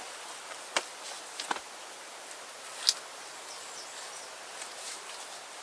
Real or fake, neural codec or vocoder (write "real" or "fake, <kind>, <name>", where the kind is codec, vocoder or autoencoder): real